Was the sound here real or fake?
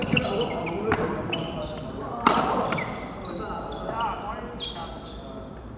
real